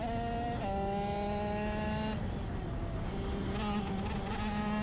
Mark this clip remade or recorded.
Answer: recorded